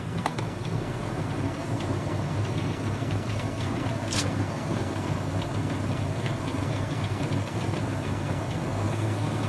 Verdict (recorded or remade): remade